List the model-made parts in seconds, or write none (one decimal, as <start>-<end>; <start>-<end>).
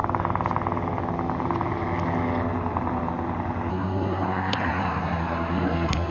3.7-6.1